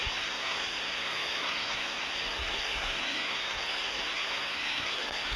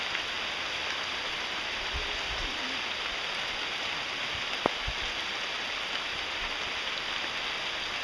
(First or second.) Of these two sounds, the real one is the second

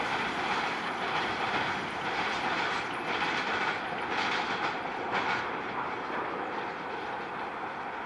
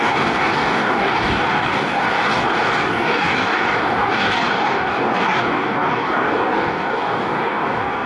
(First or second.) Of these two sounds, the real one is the first